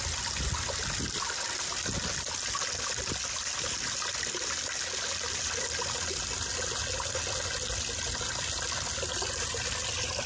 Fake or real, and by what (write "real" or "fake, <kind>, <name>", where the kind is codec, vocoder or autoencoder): real